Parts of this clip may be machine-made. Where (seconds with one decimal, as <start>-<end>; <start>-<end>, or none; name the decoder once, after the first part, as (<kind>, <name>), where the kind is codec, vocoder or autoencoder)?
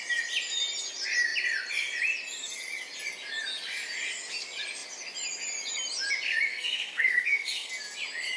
6.5-7.7 (codec, SNAC)